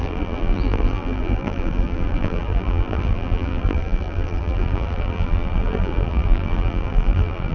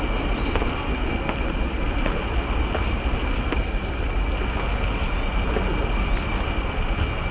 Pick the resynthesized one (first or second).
first